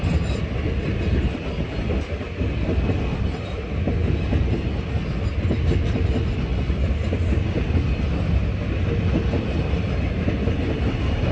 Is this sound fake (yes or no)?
no